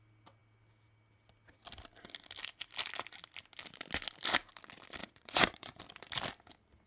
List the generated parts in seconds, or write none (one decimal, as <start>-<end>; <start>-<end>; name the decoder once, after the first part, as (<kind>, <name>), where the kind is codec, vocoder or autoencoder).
5.0-5.8 (vocoder, Vocos)